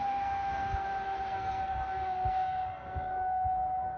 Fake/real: fake